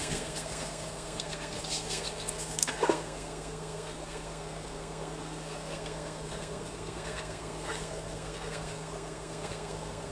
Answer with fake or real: fake